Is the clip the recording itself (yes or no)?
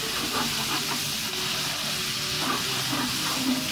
yes